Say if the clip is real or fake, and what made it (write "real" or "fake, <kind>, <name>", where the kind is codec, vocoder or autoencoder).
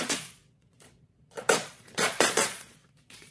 fake, vocoder, Vocos